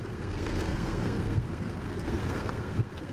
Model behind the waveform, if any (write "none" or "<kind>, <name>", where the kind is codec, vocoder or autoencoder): codec, SNAC